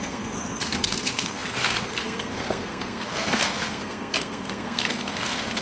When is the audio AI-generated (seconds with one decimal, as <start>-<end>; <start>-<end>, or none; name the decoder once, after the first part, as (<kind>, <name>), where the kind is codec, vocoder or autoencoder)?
0.0-5.6 (codec, SNAC)